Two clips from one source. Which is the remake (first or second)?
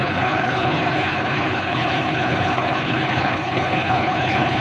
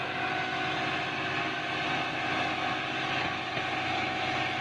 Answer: first